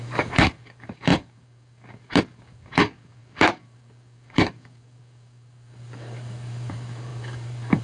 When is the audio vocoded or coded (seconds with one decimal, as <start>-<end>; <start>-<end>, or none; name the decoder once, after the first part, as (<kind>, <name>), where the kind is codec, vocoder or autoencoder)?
0.0-7.8 (codec, DAC)